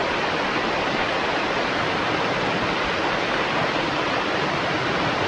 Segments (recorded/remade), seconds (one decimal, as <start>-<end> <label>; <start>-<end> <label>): 0.0-5.3 recorded